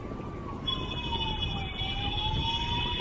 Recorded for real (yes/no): yes